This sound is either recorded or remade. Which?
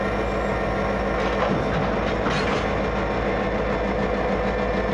recorded